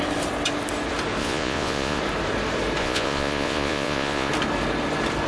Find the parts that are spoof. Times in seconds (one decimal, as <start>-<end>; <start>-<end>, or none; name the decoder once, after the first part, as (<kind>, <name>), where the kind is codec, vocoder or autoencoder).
1.2-2.0 (vocoder, Vocos); 2.8-4.3